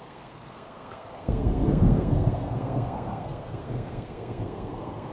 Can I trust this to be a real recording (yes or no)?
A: no